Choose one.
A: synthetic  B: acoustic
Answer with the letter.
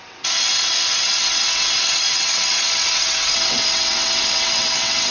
A